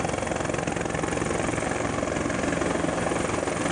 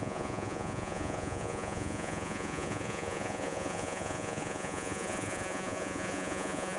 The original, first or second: first